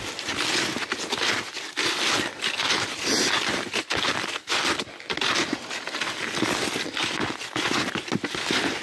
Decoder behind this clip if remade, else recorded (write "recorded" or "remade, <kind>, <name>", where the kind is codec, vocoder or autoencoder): recorded